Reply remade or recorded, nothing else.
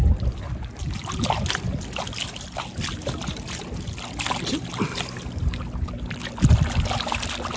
recorded